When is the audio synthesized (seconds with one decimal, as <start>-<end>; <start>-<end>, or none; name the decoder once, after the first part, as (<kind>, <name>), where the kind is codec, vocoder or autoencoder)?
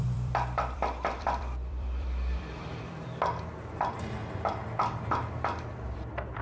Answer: 0.0-4.6 (vocoder, BigVGAN v2); 5.1-6.4